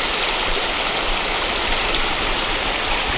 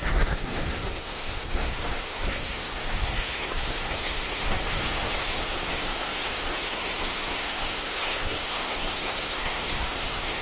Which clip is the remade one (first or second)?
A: second